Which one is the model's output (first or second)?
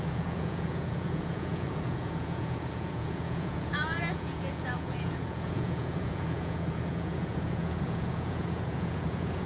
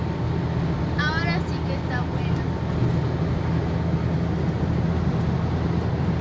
first